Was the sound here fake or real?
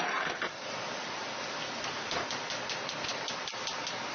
real